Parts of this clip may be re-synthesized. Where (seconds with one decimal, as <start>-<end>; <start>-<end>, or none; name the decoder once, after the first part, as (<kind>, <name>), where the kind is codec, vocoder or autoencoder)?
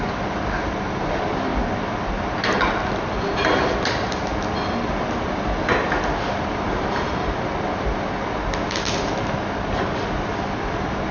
none